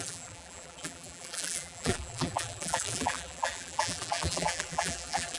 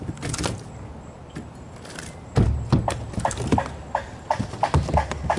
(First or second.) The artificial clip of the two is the first